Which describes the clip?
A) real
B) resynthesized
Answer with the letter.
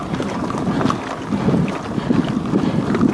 A